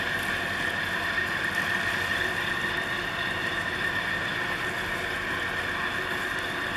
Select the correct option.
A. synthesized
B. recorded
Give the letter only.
B